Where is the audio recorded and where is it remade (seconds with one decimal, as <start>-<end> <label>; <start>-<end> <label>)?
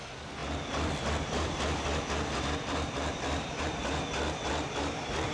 0.0-0.4 recorded; 0.4-3.6 remade; 3.6-5.3 recorded